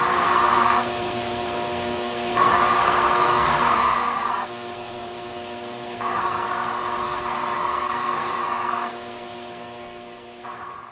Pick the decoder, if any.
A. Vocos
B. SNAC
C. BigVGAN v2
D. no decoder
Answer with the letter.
B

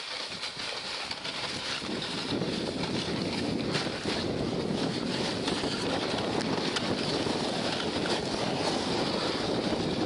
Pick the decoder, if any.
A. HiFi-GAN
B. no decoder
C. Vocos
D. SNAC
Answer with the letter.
B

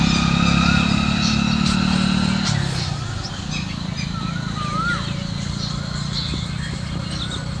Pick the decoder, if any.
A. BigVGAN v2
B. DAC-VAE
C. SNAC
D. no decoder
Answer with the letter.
D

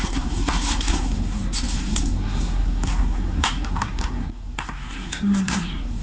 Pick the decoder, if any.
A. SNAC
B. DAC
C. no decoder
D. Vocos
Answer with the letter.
A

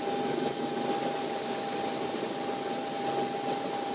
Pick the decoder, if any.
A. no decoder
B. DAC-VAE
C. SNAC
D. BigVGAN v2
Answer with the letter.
A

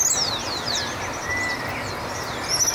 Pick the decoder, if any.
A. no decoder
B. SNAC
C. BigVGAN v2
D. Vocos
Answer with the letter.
A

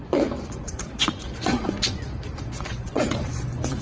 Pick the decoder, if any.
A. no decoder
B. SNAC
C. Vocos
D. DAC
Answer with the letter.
C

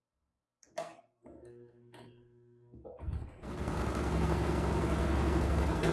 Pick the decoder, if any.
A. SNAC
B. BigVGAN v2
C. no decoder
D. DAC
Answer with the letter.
A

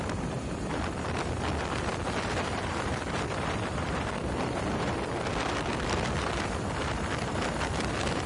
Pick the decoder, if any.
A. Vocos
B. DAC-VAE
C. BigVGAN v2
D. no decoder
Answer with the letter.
C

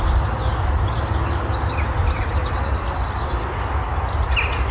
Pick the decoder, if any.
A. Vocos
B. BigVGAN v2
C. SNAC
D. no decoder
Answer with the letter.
D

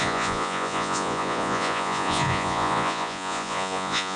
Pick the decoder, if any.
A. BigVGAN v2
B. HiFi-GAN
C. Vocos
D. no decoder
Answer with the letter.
C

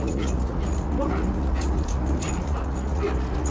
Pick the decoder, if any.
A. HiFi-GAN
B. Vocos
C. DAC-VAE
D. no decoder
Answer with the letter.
B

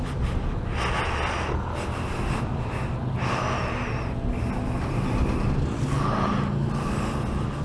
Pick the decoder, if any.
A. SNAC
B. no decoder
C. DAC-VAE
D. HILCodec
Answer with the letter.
B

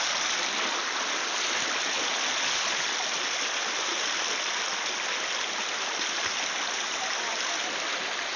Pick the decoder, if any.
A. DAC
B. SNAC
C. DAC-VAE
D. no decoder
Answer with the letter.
D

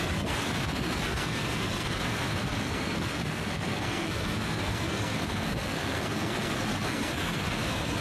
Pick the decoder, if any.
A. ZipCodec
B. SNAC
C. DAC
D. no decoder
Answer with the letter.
B